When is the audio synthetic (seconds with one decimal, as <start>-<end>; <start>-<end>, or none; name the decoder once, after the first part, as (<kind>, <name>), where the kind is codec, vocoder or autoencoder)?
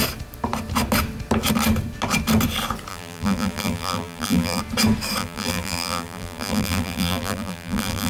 2.9-4.6 (vocoder, BigVGAN v2); 5.2-8.1